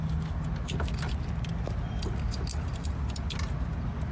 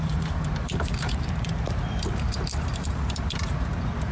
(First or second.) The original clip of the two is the first